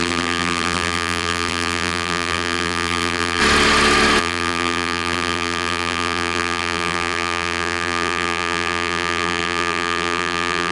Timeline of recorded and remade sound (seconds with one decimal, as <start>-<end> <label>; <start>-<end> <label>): 0.0-3.4 remade; 3.4-4.2 recorded; 4.2-10.7 remade

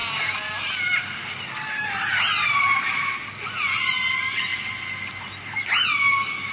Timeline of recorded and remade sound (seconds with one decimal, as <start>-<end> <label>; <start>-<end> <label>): 0.0-6.5 recorded

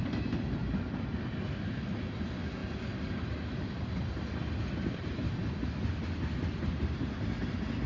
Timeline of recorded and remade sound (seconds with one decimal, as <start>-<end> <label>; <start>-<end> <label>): 0.0-0.6 recorded; 0.6-1.2 remade; 1.2-2.6 recorded; 2.6-6.7 remade; 6.7-7.9 recorded

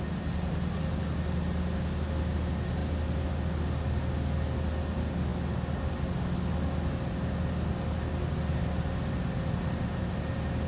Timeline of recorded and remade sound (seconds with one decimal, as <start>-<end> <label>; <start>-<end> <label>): 0.0-10.7 recorded

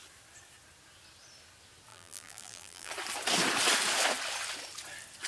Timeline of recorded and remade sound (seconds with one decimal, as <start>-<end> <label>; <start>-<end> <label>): 0.0-1.9 recorded; 1.9-2.9 remade; 2.9-5.3 recorded